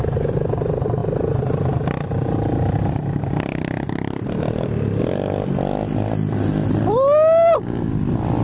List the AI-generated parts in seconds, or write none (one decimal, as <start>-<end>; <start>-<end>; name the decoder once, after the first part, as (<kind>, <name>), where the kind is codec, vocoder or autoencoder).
none